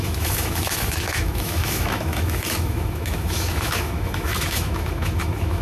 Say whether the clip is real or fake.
fake